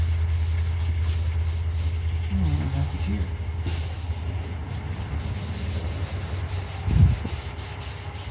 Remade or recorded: recorded